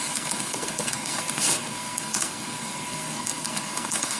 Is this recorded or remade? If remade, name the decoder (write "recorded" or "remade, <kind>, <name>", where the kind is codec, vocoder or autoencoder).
remade, codec, SNAC